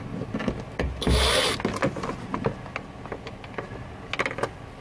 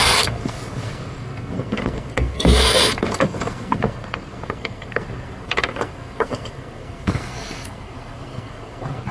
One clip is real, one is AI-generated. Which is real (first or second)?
first